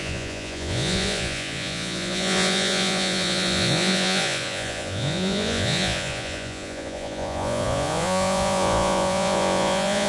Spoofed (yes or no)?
yes